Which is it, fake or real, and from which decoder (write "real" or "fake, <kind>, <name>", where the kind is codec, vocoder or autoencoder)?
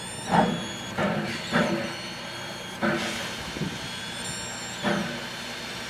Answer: real